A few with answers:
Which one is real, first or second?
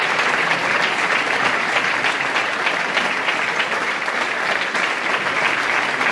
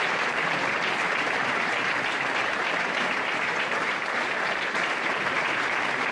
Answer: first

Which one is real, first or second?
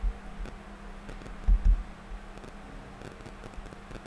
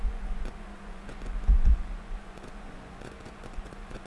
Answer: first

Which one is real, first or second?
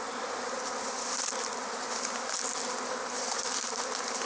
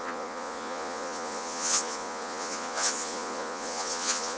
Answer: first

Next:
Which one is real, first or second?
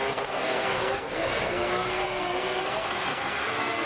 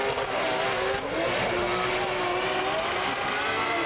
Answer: second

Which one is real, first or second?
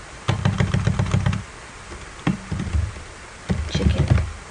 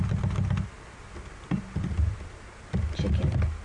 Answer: second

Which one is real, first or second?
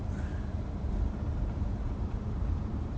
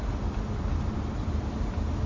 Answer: second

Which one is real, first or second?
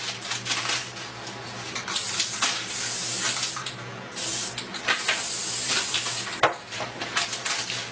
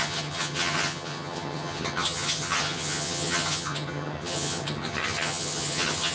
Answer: first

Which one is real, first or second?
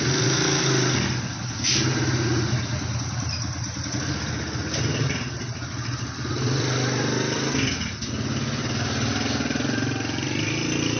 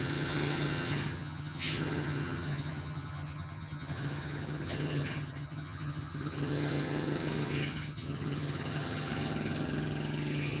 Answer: first